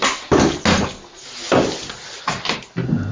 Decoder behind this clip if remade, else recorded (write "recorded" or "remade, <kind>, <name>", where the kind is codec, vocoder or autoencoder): recorded